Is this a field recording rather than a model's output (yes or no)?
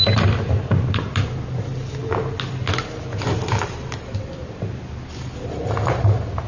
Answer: yes